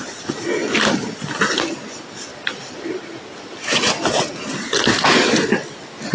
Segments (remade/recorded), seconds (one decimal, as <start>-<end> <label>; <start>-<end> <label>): 0.0-6.1 recorded